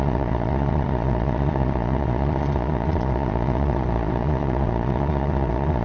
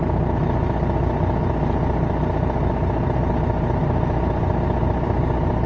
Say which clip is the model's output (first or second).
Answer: first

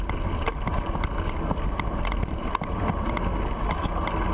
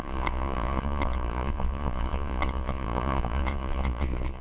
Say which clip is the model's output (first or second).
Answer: second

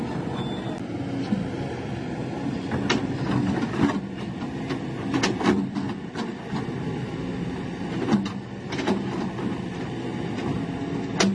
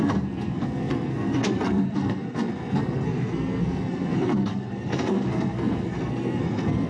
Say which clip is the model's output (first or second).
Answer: second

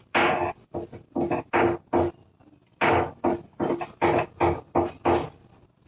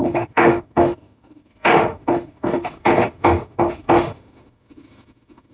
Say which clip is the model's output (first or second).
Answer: second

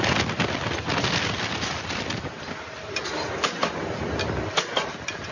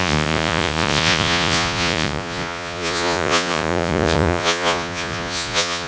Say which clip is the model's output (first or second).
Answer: second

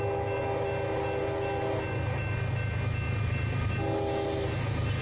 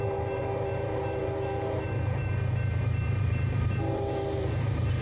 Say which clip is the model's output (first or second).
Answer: second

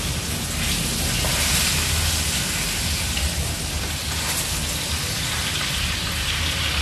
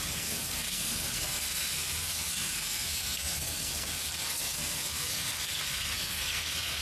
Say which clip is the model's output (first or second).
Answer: second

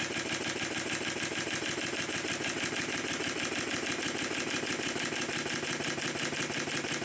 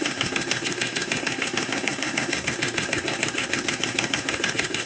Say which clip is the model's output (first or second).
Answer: second